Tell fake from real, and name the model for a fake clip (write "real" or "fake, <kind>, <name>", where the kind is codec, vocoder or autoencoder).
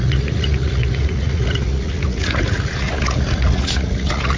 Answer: fake, vocoder, Vocos